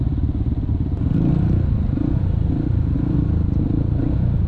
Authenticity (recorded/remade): recorded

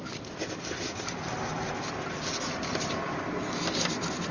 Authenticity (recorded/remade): recorded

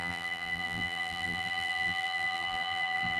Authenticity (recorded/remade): remade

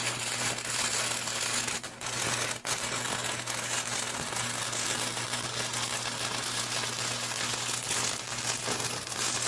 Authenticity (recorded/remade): recorded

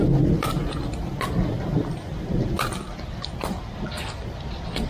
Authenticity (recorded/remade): recorded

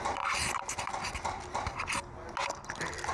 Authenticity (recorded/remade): recorded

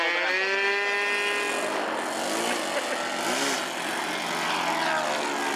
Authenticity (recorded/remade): recorded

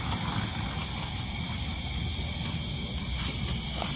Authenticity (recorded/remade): recorded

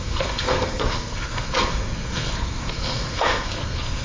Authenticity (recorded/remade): remade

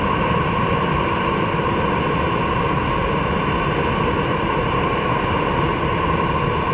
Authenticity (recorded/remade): recorded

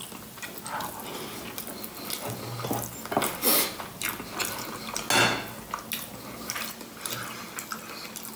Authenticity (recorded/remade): recorded